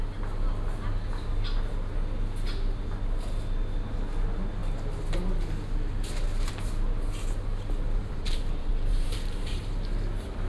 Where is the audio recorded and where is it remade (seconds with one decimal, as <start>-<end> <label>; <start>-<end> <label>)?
0.0-8.0 recorded; 8.0-9.6 remade; 9.6-10.5 recorded